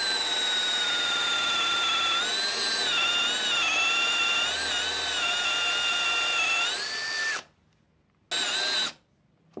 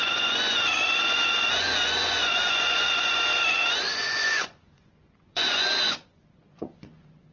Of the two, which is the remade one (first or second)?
second